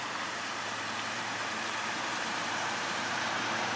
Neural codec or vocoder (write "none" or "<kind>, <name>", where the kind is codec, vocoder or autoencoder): vocoder, BigVGAN v2